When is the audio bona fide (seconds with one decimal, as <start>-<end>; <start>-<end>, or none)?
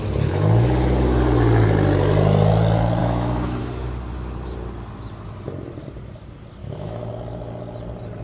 0.0-3.0; 3.6-6.6; 7.1-8.2